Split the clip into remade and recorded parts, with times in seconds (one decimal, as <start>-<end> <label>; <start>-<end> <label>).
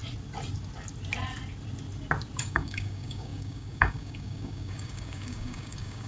0.0-2.4 recorded; 2.4-6.1 remade